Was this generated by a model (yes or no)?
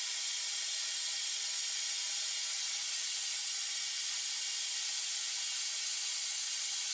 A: no